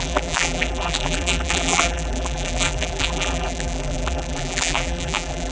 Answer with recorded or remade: remade